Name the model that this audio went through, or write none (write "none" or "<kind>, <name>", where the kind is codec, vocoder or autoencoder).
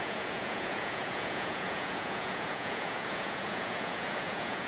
vocoder, Vocos